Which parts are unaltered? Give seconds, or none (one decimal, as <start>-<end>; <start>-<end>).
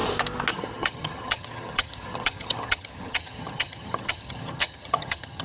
0.0-0.5